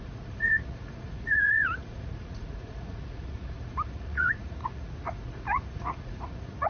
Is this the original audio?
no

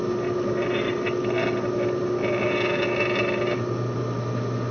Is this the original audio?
yes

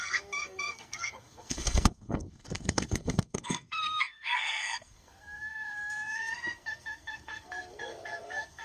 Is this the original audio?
no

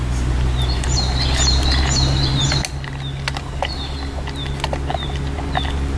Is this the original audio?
yes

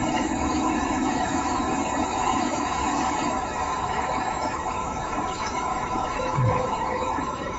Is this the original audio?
no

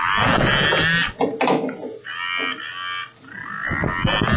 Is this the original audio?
yes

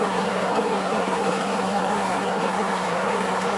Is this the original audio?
no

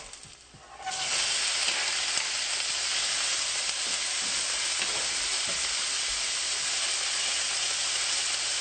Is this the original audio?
yes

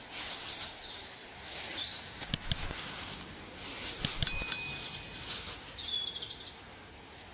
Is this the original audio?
yes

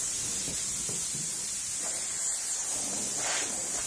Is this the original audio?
yes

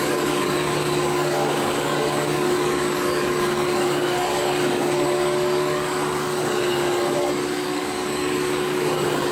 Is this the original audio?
no